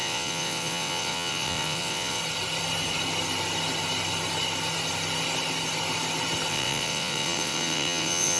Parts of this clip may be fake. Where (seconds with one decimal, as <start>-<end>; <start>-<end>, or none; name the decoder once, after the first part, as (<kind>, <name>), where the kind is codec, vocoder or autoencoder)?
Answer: 0.0-2.2 (vocoder, WaveNeXt); 6.5-8.4